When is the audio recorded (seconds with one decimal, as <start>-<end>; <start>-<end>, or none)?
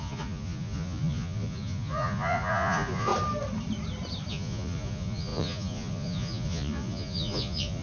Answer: 3.1-4.3